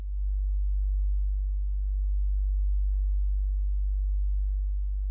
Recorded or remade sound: remade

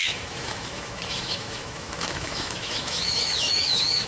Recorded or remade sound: remade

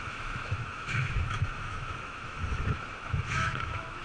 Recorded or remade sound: remade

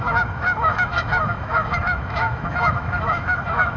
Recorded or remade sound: remade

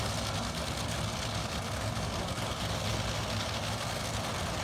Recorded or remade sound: recorded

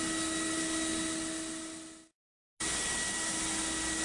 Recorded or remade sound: recorded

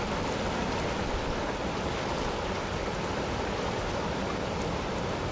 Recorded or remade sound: recorded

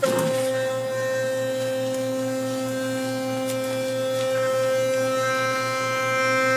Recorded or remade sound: recorded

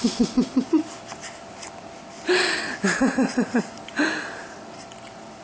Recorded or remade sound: recorded